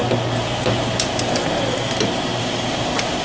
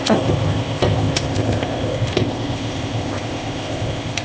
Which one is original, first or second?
first